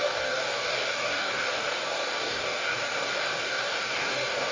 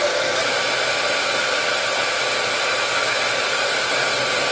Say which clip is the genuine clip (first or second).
second